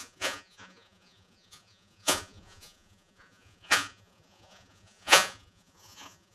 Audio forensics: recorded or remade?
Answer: remade